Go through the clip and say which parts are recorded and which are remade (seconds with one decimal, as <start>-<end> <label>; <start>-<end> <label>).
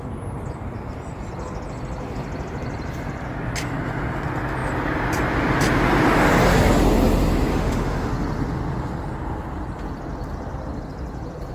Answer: 0.0-7.5 recorded; 7.5-8.1 remade; 8.1-11.5 recorded